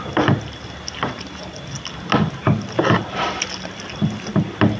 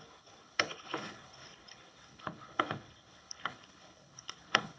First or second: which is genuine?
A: first